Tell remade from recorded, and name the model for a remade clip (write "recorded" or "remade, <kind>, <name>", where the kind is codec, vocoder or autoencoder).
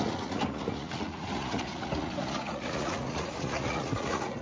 remade, vocoder, Vocos